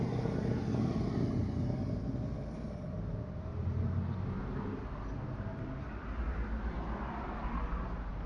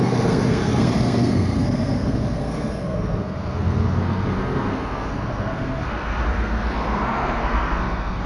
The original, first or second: first